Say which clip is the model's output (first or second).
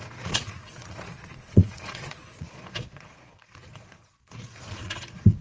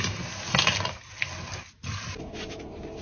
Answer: first